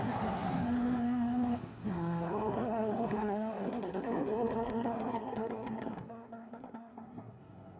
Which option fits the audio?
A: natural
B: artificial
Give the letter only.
B